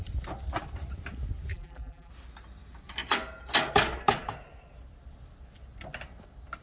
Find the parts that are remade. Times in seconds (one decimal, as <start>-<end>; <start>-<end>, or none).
1.5-2.1